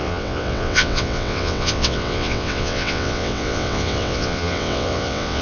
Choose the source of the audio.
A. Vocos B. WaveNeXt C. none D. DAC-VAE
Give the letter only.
B